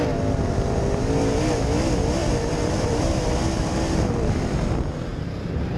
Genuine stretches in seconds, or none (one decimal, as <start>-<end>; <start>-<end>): 0.0-2.2; 3.3-5.1

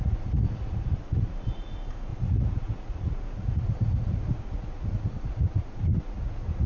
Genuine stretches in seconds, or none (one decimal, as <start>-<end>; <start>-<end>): none

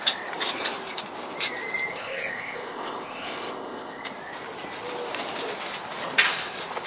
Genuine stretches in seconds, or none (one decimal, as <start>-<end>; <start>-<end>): 0.0-1.9; 4.1-6.9

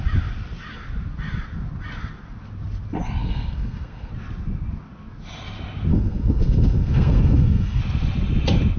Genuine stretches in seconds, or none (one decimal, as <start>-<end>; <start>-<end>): 0.0-3.2; 4.1-5.9; 7.8-8.8